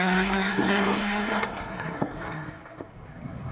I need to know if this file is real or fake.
fake